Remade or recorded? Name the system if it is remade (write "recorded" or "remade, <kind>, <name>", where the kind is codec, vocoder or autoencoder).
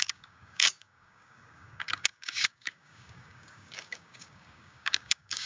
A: remade, codec, DAC